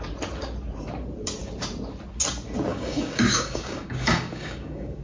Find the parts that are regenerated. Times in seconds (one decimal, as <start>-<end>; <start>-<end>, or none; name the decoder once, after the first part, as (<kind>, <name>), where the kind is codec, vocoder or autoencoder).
2.7-5.0 (codec, DAC)